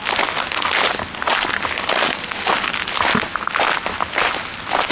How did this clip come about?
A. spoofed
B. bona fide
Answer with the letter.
B